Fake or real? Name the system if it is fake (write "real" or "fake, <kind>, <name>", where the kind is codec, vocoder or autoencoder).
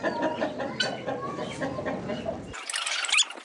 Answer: real